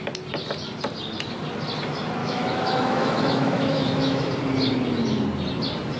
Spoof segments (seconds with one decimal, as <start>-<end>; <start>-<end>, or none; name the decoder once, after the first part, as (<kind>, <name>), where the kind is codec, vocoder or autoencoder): 2.2-4.3 (autoencoder, DAC-VAE)